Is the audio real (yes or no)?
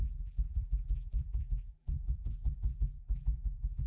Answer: no